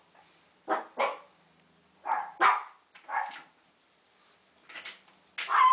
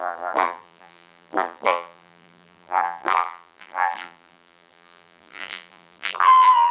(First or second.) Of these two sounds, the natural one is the first